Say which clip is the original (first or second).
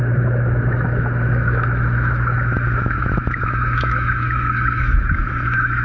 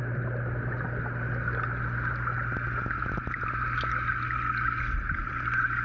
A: second